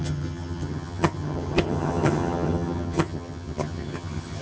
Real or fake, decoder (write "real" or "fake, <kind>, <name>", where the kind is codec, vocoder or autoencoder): fake, vocoder, HiFi-GAN